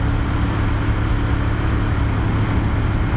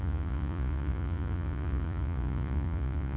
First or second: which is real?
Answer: first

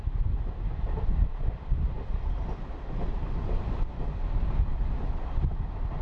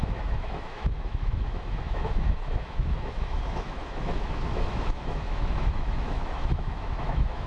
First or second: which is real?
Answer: first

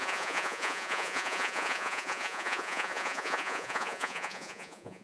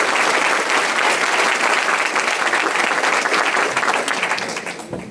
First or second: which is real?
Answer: second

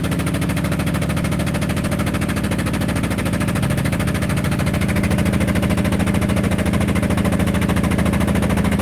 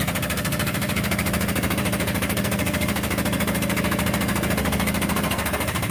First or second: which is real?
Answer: first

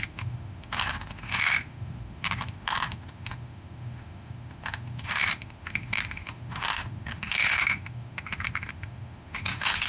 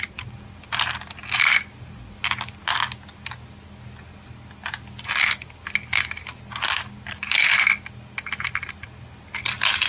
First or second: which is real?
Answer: second